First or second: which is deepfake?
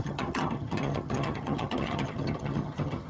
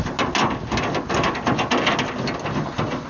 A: first